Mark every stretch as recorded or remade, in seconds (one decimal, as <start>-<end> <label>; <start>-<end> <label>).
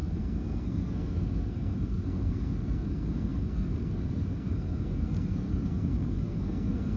0.0-7.0 remade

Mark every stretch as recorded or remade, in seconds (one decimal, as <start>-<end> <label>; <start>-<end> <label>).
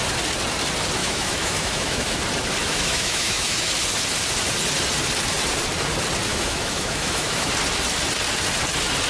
0.0-1.0 recorded; 1.0-2.2 remade; 2.2-2.6 recorded; 2.6-3.7 remade; 3.7-6.3 recorded; 6.3-7.5 remade; 7.5-9.1 recorded